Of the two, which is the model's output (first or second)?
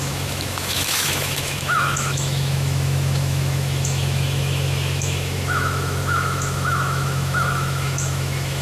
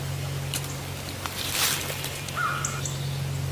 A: first